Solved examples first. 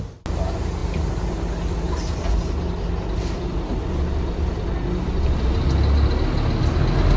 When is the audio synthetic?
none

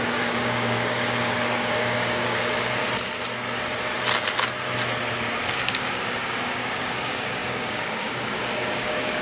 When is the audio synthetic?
0.0-2.8 (codec, DAC); 5.4-9.2

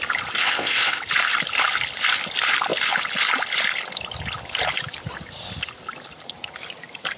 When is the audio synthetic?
0.4-1.0 (codec, ZipCodec)

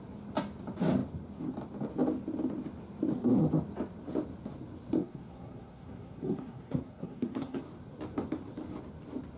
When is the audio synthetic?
5.0-7.6 (codec, SNAC)

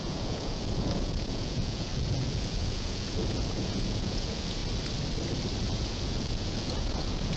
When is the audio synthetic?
0.0-4.6 (vocoder, Vocos); 5.6-7.4

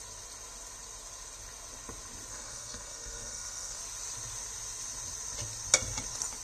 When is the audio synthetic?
2.3-3.8 (codec, SNAC)